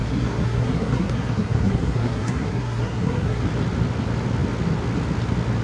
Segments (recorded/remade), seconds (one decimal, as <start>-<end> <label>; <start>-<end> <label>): 0.0-3.4 remade; 3.4-5.6 recorded